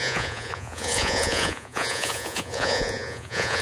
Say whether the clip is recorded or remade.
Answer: remade